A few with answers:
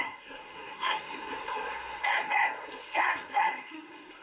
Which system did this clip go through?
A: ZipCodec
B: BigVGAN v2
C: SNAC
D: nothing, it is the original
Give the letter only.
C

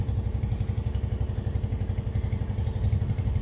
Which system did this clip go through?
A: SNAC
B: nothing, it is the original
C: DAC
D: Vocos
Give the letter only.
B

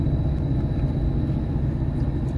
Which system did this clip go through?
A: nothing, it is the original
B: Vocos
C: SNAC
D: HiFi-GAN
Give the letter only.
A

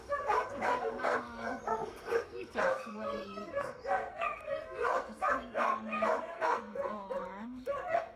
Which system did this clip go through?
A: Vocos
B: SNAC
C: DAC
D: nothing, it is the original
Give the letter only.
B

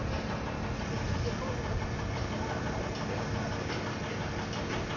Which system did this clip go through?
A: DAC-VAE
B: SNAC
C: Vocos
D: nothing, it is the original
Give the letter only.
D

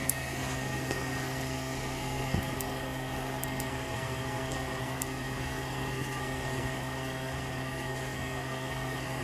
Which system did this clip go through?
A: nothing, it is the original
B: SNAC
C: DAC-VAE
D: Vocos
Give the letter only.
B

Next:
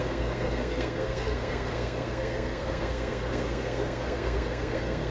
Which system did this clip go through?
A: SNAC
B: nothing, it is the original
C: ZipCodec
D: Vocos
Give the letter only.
A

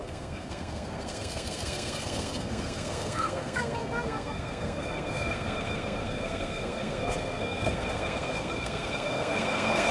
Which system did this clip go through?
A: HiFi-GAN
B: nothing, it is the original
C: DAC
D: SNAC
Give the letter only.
D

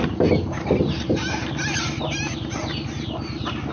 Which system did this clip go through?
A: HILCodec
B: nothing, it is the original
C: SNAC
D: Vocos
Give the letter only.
B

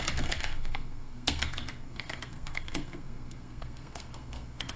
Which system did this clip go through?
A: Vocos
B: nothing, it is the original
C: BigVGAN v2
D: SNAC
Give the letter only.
D